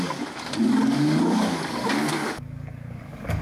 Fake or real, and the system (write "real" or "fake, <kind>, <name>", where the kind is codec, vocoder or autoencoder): fake, codec, DAC